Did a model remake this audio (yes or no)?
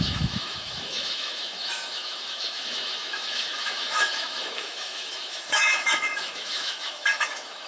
yes